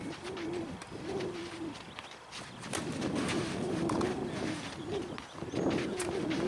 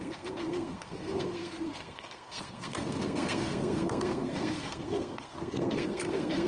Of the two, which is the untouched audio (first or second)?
first